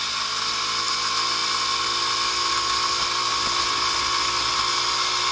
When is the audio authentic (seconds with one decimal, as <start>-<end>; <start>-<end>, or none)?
0.0-5.3